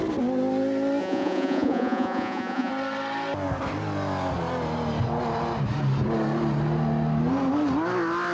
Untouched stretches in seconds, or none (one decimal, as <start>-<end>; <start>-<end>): 0.0-1.0; 2.7-8.3